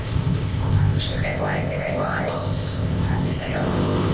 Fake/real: fake